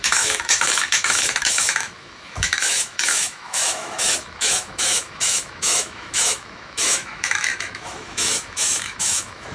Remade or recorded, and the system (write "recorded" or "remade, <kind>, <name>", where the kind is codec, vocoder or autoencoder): remade, autoencoder, DAC-VAE